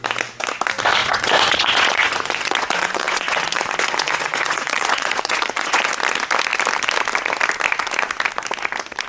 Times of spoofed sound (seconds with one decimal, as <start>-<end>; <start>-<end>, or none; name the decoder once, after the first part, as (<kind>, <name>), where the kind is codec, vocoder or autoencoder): 1.0-5.9 (vocoder, Vocos)